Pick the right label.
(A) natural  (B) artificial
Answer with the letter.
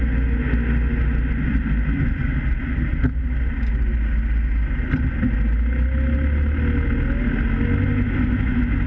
A